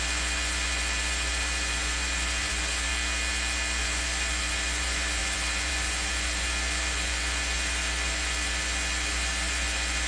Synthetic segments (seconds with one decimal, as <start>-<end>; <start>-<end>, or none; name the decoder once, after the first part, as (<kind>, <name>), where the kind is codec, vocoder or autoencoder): 0.0-2.9 (vocoder, Vocos); 3.8-10.1